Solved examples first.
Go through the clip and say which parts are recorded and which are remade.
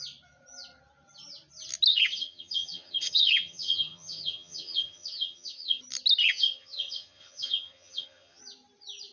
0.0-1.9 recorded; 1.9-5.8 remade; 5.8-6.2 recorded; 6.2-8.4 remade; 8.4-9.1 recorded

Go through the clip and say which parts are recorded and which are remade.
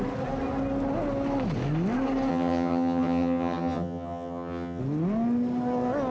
0.0-2.3 recorded; 2.3-4.8 remade; 4.8-6.1 recorded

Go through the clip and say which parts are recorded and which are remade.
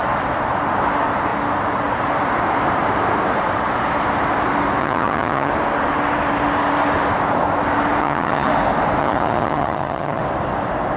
0.0-4.8 recorded; 4.8-5.5 remade; 5.5-8.0 recorded; 8.0-8.5 remade; 8.5-9.0 recorded; 9.0-10.2 remade; 10.2-11.0 recorded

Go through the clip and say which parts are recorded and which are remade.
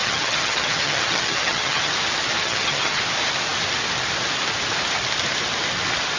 0.0-1.9 remade; 1.9-2.4 recorded; 2.4-3.0 remade; 3.0-6.2 recorded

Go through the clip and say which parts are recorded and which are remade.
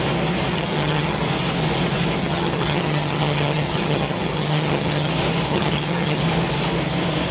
0.0-0.5 recorded; 0.5-1.2 remade; 1.2-2.2 recorded; 2.2-5.1 remade; 5.1-5.5 recorded; 5.5-6.2 remade; 6.2-7.3 recorded